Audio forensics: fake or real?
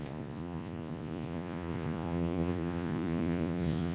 fake